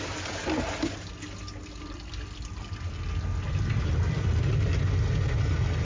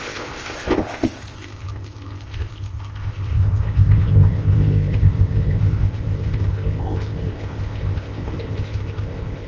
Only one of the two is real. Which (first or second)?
first